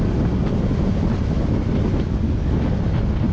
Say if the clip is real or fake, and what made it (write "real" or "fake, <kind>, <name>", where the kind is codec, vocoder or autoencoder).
real